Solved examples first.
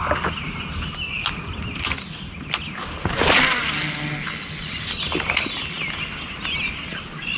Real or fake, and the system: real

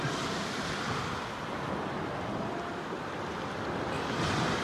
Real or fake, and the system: real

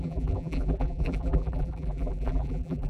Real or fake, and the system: fake, vocoder, BigVGAN v2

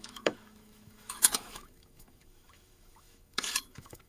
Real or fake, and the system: fake, autoencoder, DAC-VAE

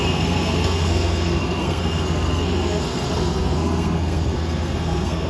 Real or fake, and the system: fake, codec, SNAC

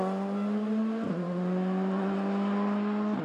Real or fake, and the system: real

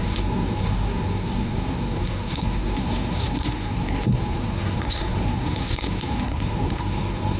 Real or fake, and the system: fake, codec, SNAC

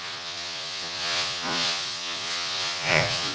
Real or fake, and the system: fake, vocoder, Vocos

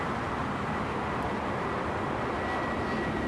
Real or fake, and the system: real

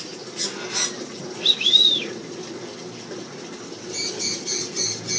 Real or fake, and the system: real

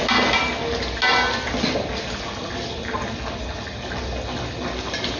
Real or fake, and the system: real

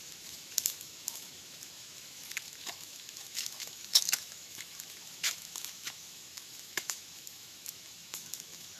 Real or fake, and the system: fake, autoencoder, DAC-VAE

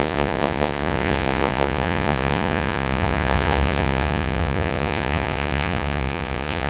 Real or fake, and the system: fake, vocoder, Vocos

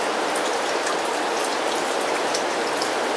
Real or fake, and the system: real